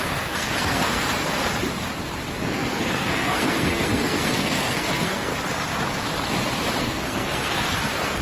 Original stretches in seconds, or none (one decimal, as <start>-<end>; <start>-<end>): 1.4-2.3; 5.3-6.8